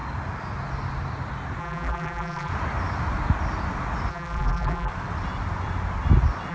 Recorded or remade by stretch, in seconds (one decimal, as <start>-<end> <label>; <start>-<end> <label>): 0.0-1.6 recorded; 1.6-2.5 remade; 2.5-4.1 recorded; 4.1-4.9 remade; 4.9-6.5 recorded